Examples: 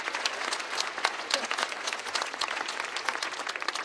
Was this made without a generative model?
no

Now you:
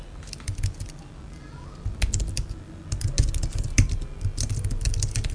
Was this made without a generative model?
yes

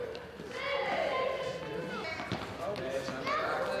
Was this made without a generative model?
no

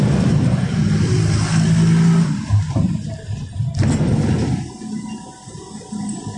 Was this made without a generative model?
yes